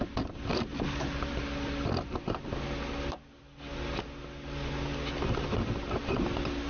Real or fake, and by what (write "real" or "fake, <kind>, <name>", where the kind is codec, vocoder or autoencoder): real